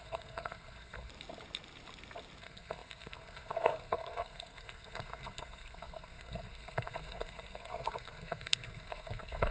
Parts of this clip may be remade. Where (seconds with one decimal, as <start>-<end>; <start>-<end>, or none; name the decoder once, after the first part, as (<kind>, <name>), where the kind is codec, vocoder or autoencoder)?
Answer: 0.0-1.1 (codec, SNAC); 2.4-9.5